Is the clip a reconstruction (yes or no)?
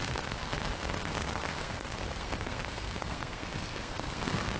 yes